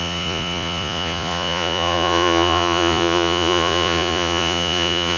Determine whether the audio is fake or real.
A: fake